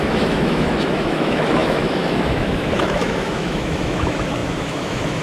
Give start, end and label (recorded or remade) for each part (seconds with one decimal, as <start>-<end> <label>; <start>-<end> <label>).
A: 0.0-5.2 remade